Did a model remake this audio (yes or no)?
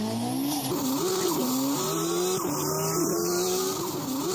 no